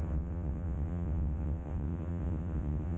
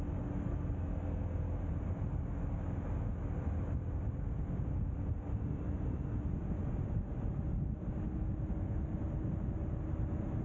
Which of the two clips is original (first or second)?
second